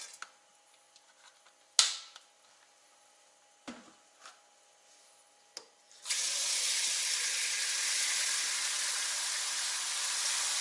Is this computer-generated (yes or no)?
no